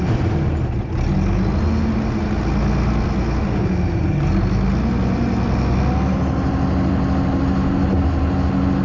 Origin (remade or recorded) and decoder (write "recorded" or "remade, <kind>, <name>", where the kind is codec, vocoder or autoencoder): recorded